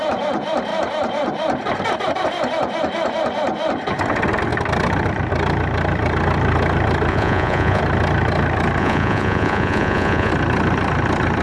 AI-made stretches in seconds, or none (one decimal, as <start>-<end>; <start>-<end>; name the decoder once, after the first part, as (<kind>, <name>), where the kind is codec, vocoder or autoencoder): 7.1-7.8 (vocoder, Vocos); 8.8-10.3

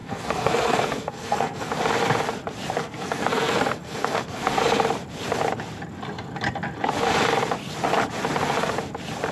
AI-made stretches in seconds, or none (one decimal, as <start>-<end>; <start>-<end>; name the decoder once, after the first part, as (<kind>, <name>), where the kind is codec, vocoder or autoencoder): 0.0-1.7 (codec, SNAC); 2.8-4.6

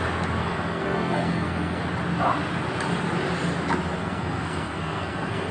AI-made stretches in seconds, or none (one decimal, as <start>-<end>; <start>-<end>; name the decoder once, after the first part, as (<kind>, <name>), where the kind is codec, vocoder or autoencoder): 0.4-1.8 (codec, SNAC); 4.0-5.5

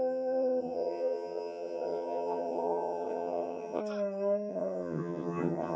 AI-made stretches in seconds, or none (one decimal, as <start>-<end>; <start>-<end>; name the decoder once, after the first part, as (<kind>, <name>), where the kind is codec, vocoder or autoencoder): 0.0-3.8 (vocoder, HiFi-GAN); 4.5-5.8